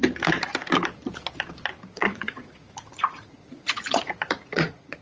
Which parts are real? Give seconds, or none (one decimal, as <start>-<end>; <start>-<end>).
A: 0.0-1.9